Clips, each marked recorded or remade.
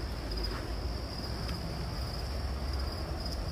recorded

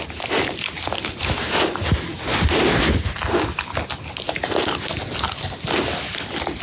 recorded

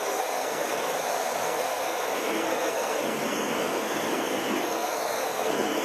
remade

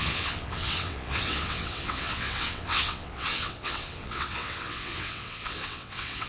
remade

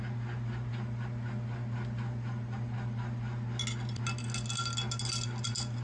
recorded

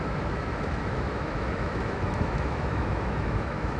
remade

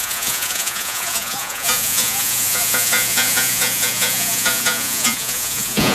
remade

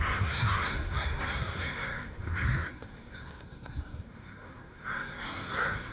remade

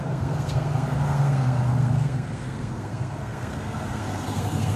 remade